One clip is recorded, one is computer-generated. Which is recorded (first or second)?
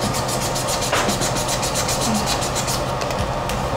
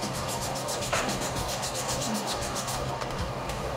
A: first